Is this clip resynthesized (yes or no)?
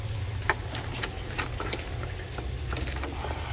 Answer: no